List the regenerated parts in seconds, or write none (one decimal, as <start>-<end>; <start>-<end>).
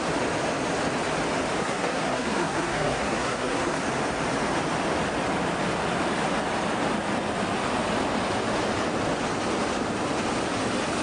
1.6-3.8